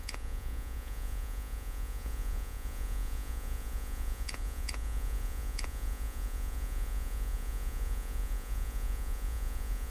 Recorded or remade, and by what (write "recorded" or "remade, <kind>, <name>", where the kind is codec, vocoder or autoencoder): remade, vocoder, Vocos